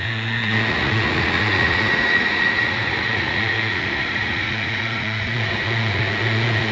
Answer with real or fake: fake